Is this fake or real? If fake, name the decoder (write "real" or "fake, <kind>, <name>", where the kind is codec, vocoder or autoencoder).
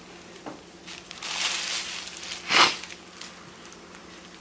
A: real